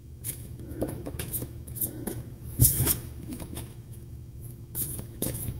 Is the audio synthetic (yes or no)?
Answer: yes